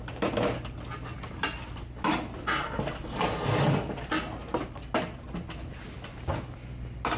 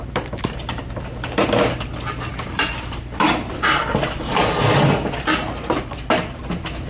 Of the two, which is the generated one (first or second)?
second